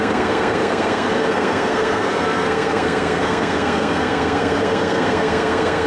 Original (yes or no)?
no